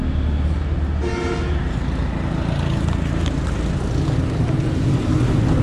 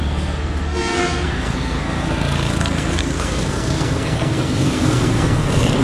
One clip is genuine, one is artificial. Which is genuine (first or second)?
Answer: first